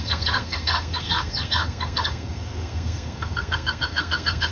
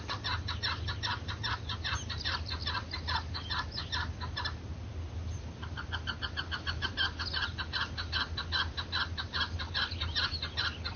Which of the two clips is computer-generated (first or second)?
first